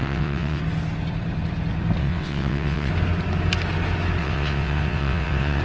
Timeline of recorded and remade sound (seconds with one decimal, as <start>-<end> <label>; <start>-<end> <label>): 0.0-0.6 remade; 0.6-2.0 recorded; 2.0-2.9 remade; 2.9-4.2 recorded; 4.2-5.6 remade